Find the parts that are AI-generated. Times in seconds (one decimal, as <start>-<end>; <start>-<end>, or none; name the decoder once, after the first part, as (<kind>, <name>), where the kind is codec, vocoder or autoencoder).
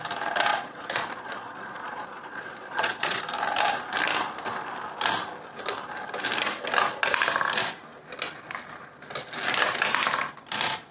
0.5-3.2 (vocoder, Vocos)